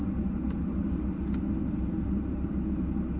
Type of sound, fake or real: real